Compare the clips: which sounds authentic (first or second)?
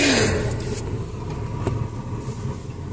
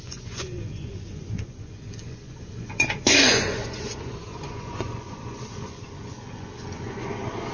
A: first